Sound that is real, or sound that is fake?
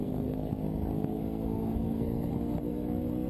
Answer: fake